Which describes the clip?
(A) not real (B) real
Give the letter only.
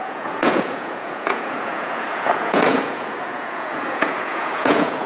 A